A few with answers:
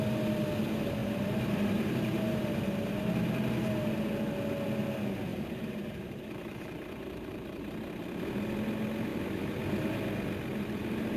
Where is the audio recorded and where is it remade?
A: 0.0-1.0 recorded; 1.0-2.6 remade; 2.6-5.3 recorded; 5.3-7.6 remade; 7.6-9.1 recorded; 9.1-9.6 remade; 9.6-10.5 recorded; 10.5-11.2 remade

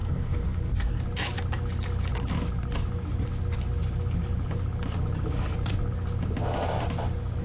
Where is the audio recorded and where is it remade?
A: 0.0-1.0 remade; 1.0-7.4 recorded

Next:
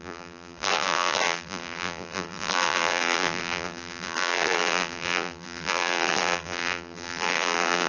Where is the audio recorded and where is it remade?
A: 0.0-7.9 remade

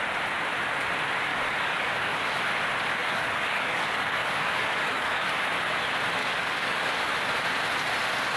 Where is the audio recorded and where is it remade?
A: 0.0-1.3 recorded; 1.3-2.2 remade; 2.2-3.0 recorded; 3.0-5.5 remade; 5.5-6.2 recorded; 6.2-7.1 remade; 7.1-8.4 recorded

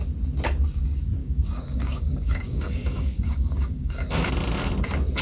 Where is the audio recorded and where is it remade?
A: 0.0-1.2 recorded; 1.2-4.3 remade; 4.3-5.2 recorded

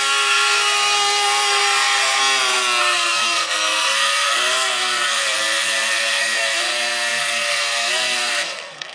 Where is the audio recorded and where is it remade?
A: 0.0-2.2 remade; 2.2-2.8 recorded; 2.8-8.9 remade

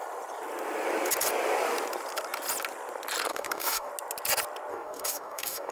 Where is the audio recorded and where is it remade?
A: 0.0-3.3 recorded; 3.3-3.9 remade; 3.9-4.7 recorded; 4.7-5.7 remade